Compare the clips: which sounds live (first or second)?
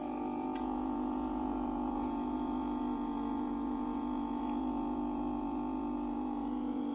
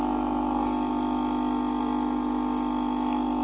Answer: second